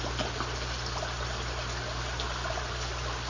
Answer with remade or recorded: recorded